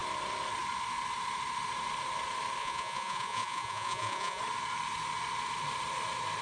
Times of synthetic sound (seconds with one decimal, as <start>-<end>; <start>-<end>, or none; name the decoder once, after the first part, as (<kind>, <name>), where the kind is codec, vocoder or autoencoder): 2.6-4.4 (vocoder, Vocos)